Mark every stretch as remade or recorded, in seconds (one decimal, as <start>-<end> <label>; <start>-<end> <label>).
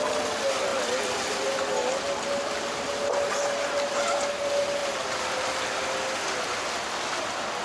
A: 0.0-7.6 recorded